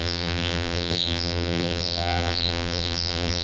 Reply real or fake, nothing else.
fake